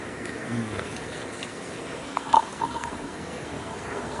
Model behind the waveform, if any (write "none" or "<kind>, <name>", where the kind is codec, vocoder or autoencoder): codec, SNAC